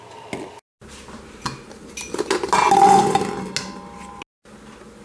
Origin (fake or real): real